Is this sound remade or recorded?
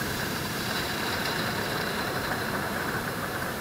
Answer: remade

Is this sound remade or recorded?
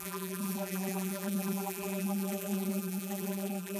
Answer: remade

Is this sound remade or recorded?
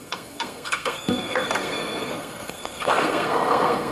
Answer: remade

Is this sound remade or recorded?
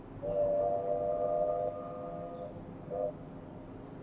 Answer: recorded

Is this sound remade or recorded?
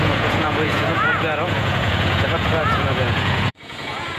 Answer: remade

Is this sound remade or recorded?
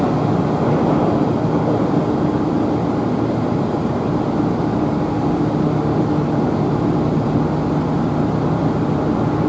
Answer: recorded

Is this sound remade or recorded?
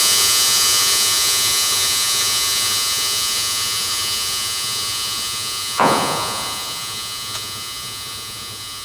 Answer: remade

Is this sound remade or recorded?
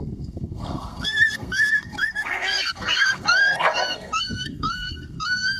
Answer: remade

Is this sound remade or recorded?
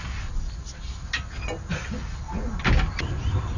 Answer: recorded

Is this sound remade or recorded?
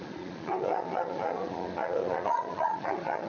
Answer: remade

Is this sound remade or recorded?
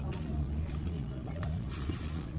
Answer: remade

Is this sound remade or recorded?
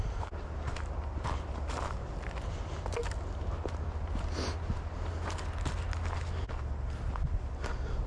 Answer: recorded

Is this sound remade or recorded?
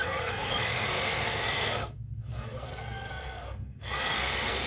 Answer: remade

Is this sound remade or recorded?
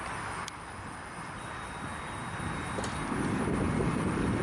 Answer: remade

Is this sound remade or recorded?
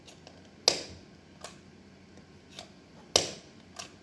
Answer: recorded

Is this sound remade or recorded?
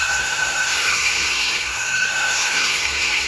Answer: remade